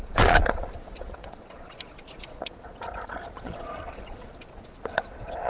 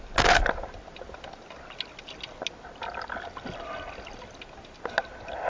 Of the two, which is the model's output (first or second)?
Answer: first